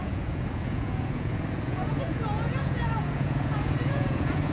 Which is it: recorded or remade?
remade